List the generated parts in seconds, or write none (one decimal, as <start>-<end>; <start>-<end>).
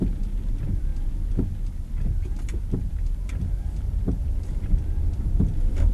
0.0-5.9